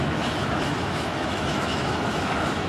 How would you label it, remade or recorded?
remade